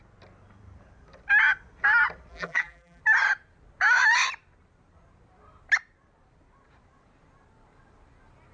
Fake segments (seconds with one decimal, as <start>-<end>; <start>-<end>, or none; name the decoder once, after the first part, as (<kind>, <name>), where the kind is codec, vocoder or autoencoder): 2.3-3.0 (vocoder, BigVGAN v2)